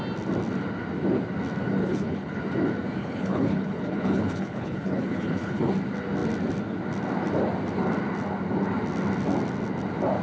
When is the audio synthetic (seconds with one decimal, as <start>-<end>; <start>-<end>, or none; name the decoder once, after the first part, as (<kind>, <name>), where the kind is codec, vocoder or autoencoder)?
1.8-2.4 (codec, HILCodec); 3.0-5.7